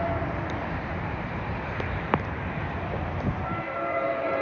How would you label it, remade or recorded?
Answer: remade